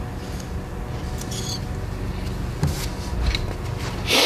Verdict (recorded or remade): recorded